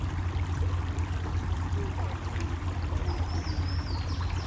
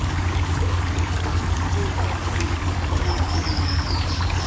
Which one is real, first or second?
first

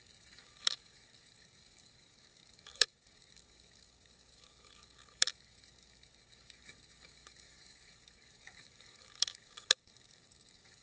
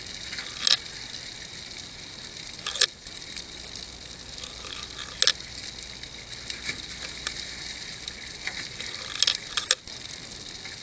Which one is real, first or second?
second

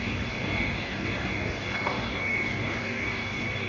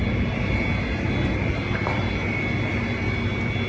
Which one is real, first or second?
second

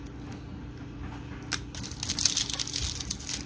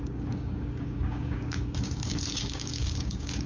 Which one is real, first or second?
first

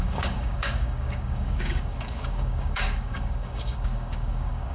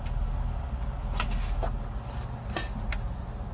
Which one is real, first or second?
second